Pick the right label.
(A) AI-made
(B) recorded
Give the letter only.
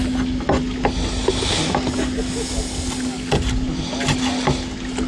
B